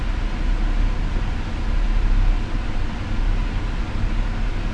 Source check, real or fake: real